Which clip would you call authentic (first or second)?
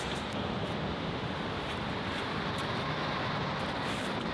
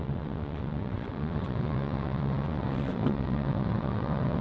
first